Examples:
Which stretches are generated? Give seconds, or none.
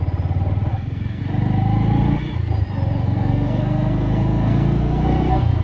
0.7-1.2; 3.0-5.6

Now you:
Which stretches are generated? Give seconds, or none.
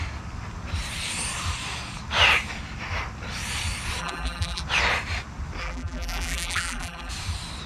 4.0-4.6; 5.6-7.1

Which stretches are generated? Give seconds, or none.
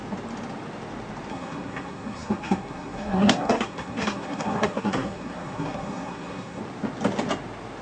1.3-6.6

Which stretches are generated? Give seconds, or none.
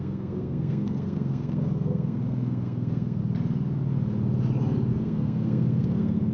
0.0-3.2; 4.9-6.3